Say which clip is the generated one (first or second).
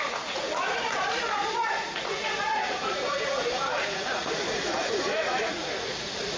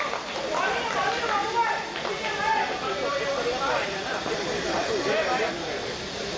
first